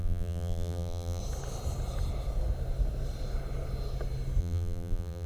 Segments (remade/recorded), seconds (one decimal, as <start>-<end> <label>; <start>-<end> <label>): 0.0-1.2 remade; 1.2-4.4 recorded; 4.4-5.3 remade